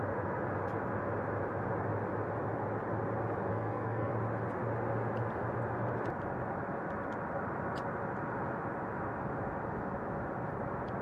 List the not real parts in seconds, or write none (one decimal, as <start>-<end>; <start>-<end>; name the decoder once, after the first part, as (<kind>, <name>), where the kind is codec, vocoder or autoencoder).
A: 3.5-4.1 (codec, SNAC)